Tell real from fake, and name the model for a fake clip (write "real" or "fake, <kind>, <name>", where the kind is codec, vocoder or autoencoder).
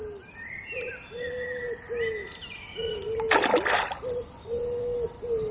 real